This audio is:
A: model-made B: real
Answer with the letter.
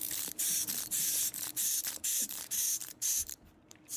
A